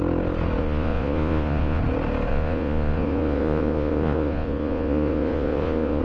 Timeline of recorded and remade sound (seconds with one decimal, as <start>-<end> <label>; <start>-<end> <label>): 0.0-0.6 recorded; 0.6-1.8 remade; 1.8-2.3 recorded; 2.3-6.0 remade